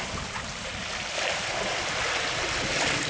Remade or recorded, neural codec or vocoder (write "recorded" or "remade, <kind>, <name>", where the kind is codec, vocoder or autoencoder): recorded